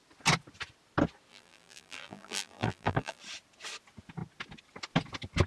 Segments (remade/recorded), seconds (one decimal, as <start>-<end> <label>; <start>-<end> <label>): 0.0-1.3 recorded; 1.3-3.2 remade; 3.2-5.5 recorded